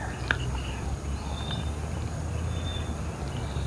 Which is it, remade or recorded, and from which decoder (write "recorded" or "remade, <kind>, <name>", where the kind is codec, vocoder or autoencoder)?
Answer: recorded